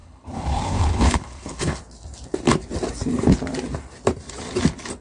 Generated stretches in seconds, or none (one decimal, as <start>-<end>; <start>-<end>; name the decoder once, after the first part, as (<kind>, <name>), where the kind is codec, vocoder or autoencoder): 0.0-1.8 (codec, HILCodec)